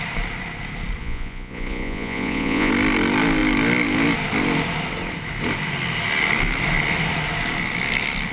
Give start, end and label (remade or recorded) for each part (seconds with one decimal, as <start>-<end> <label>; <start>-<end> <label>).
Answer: 0.0-1.0 recorded; 1.0-2.7 remade; 2.7-8.3 recorded